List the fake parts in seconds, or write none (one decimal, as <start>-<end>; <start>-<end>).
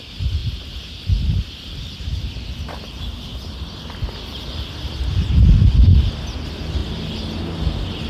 none